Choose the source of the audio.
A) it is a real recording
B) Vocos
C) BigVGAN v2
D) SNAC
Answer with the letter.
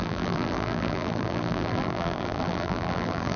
C